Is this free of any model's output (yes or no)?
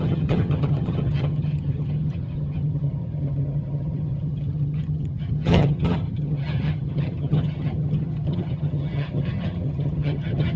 no